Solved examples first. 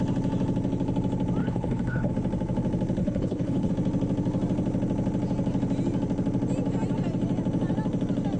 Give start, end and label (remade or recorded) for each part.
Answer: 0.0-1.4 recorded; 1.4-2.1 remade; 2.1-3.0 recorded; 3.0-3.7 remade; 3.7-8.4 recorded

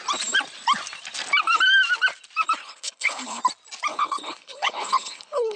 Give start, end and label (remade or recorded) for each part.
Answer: 0.0-2.6 recorded; 2.6-3.4 remade; 3.4-3.9 recorded; 3.9-5.6 remade

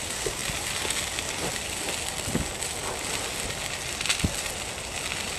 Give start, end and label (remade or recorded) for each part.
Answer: 0.0-5.4 recorded

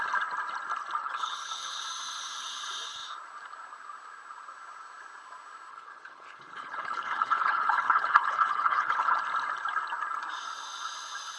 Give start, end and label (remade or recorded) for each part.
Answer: 0.0-1.0 recorded; 1.0-1.8 remade; 1.8-5.7 recorded; 5.7-9.2 remade; 9.2-11.4 recorded

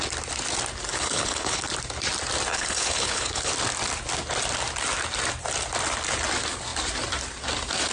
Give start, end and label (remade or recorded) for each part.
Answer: 0.0-0.9 recorded; 0.9-1.7 remade; 1.7-2.5 recorded; 2.5-3.5 remade; 3.5-7.9 recorded